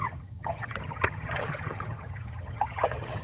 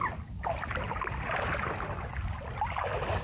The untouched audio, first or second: second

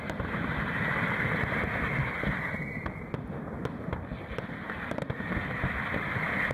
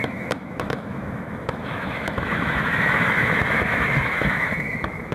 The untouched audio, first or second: first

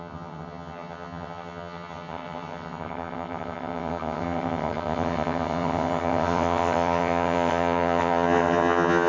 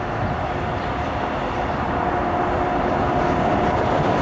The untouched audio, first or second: second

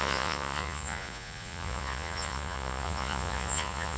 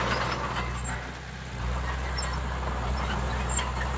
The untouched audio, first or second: second